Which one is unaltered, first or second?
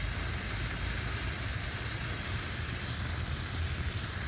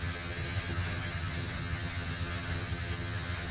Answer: first